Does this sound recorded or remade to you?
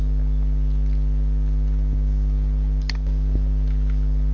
recorded